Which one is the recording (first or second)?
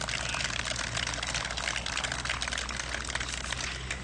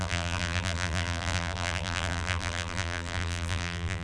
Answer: first